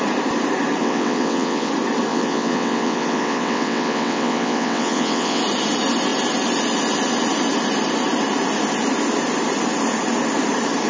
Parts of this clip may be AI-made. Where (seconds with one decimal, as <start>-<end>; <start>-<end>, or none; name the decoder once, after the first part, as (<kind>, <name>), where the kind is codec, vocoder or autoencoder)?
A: 0.8-1.7 (vocoder, WaveNeXt); 2.1-5.4